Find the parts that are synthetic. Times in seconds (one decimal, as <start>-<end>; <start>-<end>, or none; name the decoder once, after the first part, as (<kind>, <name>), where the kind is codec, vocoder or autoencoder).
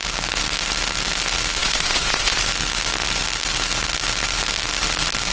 1.6-2.4 (vocoder, Vocos)